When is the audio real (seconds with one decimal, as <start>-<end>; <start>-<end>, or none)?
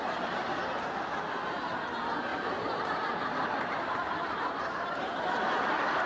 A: 0.0-2.3; 5.4-6.1